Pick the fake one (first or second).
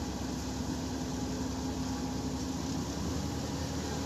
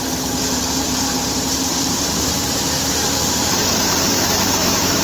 second